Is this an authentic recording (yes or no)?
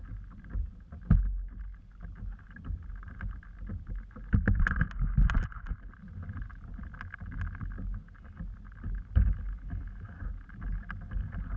yes